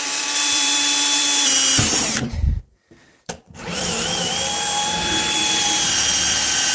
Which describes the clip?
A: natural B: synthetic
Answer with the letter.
B